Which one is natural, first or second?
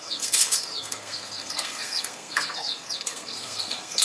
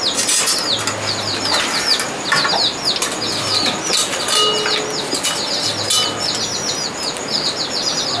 second